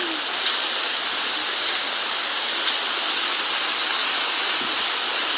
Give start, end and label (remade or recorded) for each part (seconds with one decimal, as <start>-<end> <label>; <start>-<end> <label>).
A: 0.0-4.0 recorded; 4.0-4.6 remade; 4.6-5.4 recorded